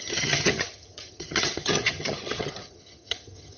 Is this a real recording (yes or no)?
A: no